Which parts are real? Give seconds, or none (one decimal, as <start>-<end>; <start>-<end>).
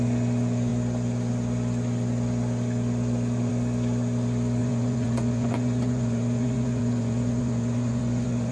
0.0-4.6